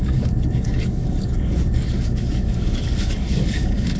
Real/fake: fake